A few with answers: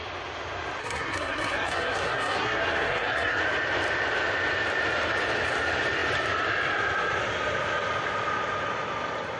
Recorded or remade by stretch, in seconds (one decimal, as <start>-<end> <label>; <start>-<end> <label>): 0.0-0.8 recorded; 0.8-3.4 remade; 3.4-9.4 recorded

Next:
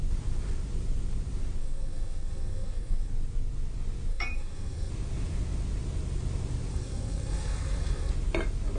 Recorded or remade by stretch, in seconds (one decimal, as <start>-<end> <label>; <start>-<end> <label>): 0.0-1.6 recorded; 1.6-3.1 remade; 3.1-4.1 recorded; 4.1-4.9 remade; 4.9-6.7 recorded; 6.7-8.1 remade; 8.1-8.8 recorded

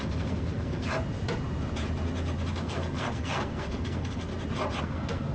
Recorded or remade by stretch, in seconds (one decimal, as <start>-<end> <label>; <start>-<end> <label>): 0.0-0.9 remade; 0.9-2.5 recorded; 2.5-4.3 remade; 4.3-4.8 recorded; 4.8-5.3 remade